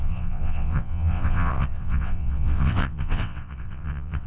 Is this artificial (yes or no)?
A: yes